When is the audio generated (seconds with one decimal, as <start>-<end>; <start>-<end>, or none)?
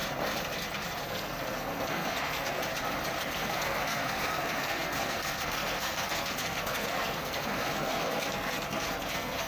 1.0-2.6; 3.2-9.5